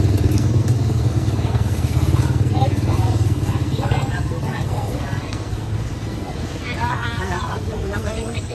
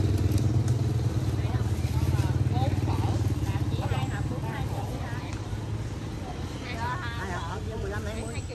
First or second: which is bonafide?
second